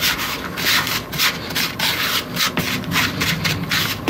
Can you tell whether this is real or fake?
real